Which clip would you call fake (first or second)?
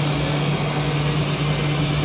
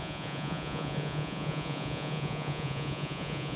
second